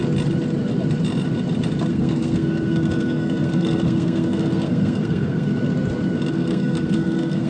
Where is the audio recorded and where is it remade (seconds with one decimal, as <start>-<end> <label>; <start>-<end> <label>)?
0.0-1.9 recorded; 1.9-5.5 remade; 5.5-6.3 recorded; 6.3-7.5 remade